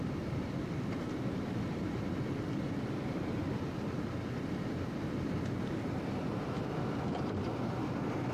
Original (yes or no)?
no